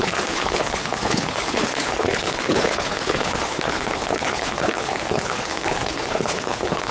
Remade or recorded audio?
remade